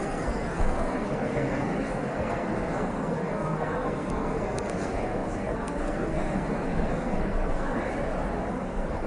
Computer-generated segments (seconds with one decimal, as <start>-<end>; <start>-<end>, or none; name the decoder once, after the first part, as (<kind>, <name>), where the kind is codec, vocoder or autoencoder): 0.0-7.9 (codec, SNAC); 8.5-9.1